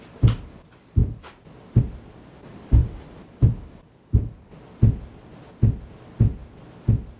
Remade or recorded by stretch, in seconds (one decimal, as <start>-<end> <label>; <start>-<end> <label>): 0.0-1.0 recorded; 1.0-1.8 remade; 1.8-2.8 recorded; 2.8-4.1 remade; 4.1-7.2 recorded